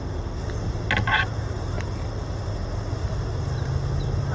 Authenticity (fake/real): real